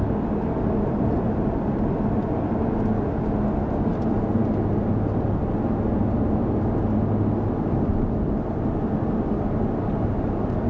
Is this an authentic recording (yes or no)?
yes